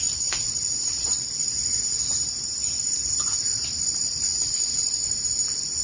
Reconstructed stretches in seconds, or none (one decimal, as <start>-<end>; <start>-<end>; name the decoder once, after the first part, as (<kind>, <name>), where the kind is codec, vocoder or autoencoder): none